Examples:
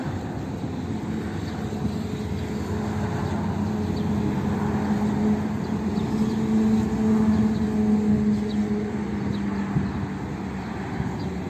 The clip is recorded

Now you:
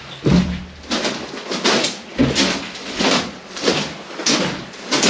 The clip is recorded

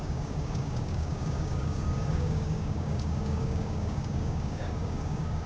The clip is remade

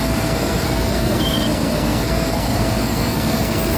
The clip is remade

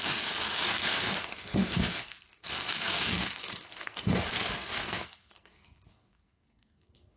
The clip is remade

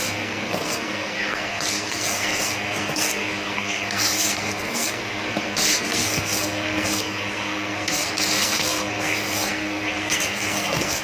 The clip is remade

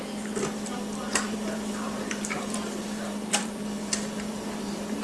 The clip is remade